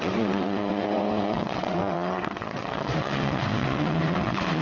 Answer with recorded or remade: remade